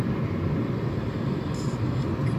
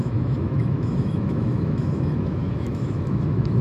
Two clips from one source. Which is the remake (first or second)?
second